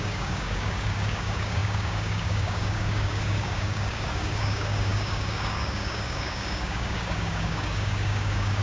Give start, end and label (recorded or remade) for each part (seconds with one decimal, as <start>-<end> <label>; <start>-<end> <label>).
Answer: 0.0-8.6 remade